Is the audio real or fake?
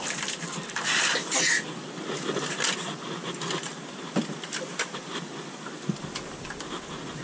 real